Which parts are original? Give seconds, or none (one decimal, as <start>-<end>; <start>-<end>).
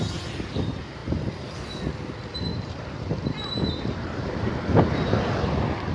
0.0-2.5; 4.5-5.9